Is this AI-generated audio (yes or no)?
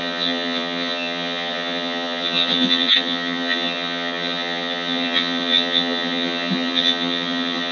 yes